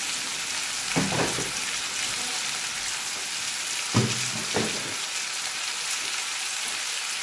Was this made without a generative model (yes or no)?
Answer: yes